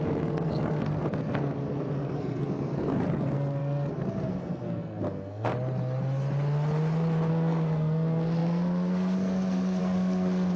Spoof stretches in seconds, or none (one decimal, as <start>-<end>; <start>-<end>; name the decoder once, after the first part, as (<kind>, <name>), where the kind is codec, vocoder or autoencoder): 0.0-5.5 (codec, SNAC); 7.3-10.6